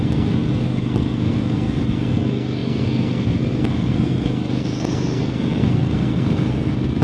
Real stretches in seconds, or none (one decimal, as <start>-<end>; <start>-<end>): none